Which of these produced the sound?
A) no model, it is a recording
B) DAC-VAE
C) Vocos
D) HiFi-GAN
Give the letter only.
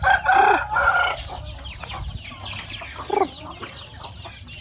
A